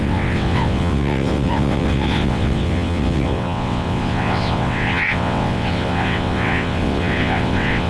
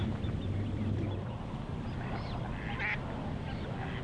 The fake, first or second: first